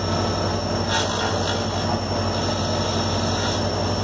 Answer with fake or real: real